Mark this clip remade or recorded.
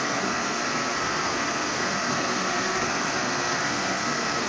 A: remade